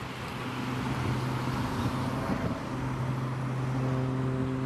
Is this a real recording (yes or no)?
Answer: yes